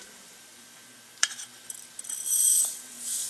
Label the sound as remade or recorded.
remade